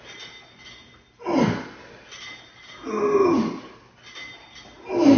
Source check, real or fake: real